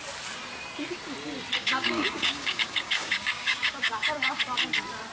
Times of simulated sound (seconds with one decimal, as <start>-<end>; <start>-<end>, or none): 1.6-4.4